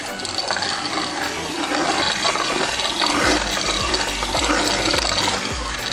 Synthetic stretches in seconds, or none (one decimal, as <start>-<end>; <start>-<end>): none